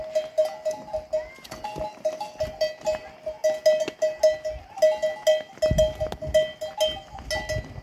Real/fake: real